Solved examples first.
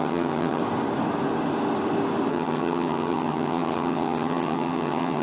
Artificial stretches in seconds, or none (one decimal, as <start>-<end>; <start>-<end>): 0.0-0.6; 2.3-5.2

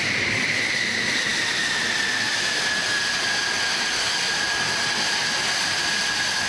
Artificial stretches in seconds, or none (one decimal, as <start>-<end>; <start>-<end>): none

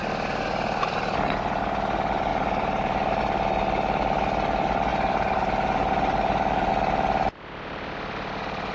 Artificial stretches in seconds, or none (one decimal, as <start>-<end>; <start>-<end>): 2.3-3.2; 4.9-6.7